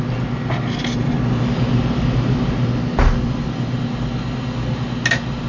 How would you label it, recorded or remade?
recorded